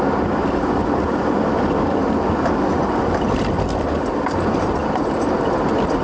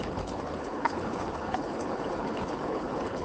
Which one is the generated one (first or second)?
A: second